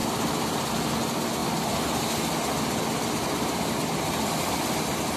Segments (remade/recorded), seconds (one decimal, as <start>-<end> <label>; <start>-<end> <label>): 0.0-5.2 recorded